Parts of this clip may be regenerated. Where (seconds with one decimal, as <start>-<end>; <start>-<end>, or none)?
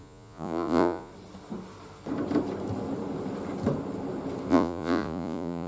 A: 0.0-1.1; 4.5-5.7